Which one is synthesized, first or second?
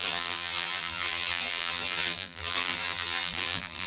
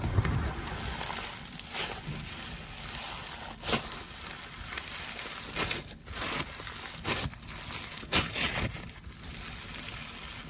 first